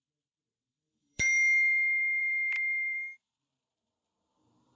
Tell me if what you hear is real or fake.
fake